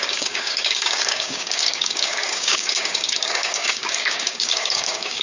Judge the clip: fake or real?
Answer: fake